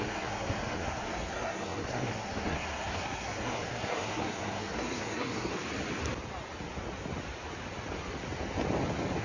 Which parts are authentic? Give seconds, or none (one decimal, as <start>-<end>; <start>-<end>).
5.5-9.2